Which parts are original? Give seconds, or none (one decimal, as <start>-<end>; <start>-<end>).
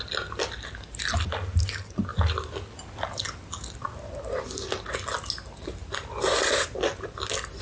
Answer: 0.0-7.6